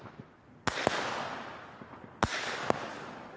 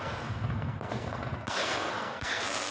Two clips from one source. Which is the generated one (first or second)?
second